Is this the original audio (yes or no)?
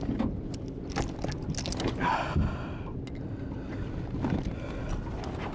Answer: yes